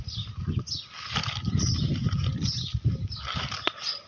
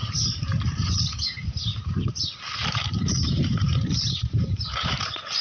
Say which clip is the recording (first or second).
first